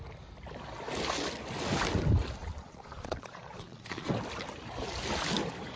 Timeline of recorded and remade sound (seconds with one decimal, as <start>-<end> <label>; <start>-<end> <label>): 0.0-2.4 recorded; 2.4-4.1 remade; 4.1-5.8 recorded

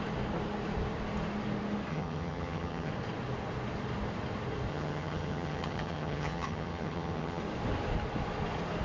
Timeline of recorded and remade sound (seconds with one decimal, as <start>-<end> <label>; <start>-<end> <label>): 0.0-1.9 recorded; 1.9-2.9 remade; 2.9-4.7 recorded; 4.7-7.4 remade; 7.4-8.8 recorded

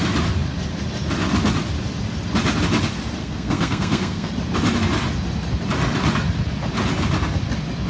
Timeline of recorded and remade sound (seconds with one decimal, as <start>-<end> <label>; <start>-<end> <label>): 0.0-3.2 recorded; 3.2-4.3 remade; 4.3-7.9 recorded